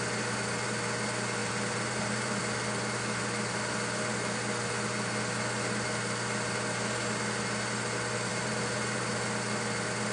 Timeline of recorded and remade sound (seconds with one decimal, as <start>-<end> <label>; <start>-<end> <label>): 0.0-1.4 recorded; 1.4-2.4 remade; 2.4-8.3 recorded; 8.3-9.1 remade; 9.1-10.1 recorded